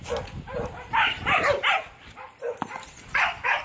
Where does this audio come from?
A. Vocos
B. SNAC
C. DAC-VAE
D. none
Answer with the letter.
D